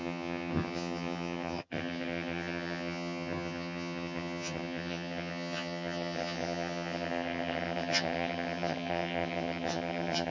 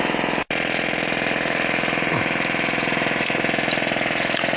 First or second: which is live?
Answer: second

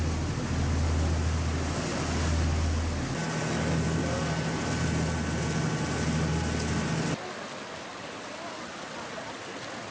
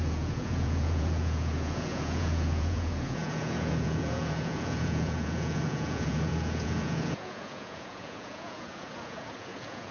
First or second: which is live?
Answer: first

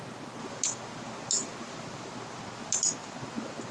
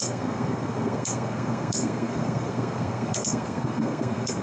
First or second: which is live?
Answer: first